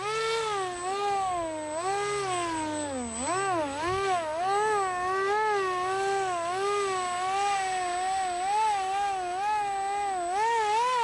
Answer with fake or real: real